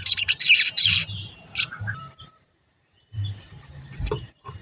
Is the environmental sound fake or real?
fake